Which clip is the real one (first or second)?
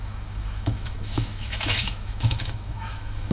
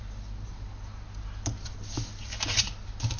second